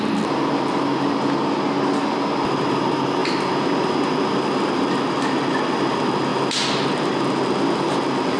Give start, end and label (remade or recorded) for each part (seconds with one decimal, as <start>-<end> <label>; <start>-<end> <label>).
0.0-8.4 recorded